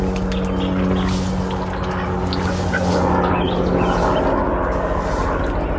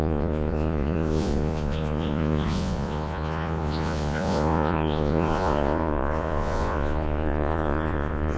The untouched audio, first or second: first